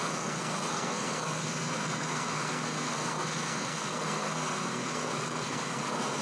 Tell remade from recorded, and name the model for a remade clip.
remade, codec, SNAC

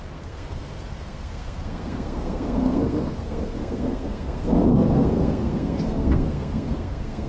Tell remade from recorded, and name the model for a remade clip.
remade, codec, SNAC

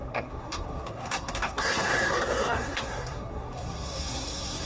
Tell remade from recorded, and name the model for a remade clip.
remade, codec, SNAC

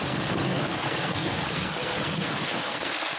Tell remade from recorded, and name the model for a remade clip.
remade, codec, SNAC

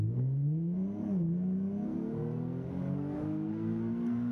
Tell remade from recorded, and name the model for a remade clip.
remade, codec, SNAC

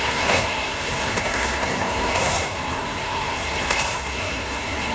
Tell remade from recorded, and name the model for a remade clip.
remade, codec, SNAC